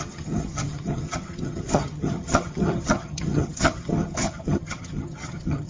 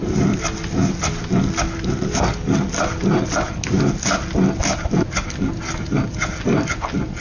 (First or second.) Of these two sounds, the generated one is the first